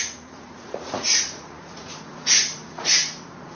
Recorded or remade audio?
remade